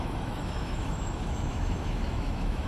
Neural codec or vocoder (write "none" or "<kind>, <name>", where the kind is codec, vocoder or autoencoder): autoencoder, DAC-VAE